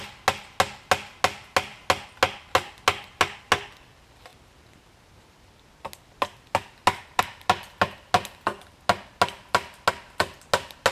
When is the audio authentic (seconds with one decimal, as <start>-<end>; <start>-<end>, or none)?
0.0-10.9